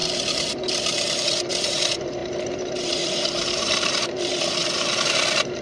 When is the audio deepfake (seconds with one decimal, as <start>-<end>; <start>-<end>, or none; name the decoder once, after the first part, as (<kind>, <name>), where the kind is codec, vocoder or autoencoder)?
0.0-5.6 (vocoder, BigVGAN v2)